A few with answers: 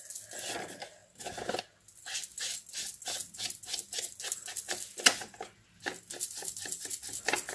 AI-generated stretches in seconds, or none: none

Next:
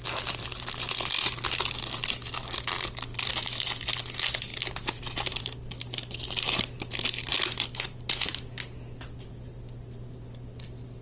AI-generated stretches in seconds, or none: none

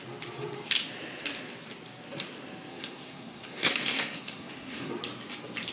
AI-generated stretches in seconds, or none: 2.7-4.9 (codec, SNAC)

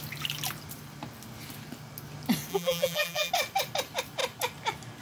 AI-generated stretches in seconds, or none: 2.5-3.3 (vocoder, BigVGAN v2)

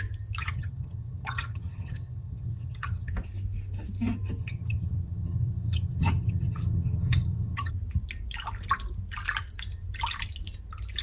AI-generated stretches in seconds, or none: 0.4-3.1 (vocoder, HiFi-GAN); 4.4-7.7

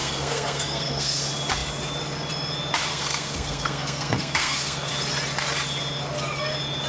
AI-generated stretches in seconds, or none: 0.0-1.2 (codec, SNAC); 2.9-4.9

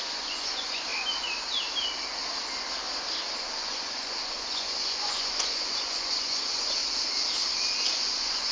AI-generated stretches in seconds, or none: 0.0-0.9 (vocoder, Vocos); 3.4-6.8; 7.9-8.5